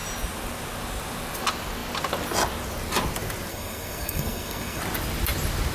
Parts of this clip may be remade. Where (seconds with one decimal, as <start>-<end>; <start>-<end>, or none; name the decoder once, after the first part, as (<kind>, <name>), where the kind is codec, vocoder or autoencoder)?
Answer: 3.5-4.8 (codec, SNAC)